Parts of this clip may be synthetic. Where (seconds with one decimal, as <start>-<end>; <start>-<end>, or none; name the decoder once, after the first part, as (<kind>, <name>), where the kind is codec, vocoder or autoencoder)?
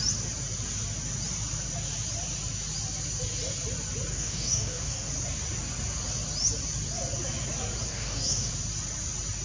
4.1-5.1 (codec, DAC); 7.9-8.5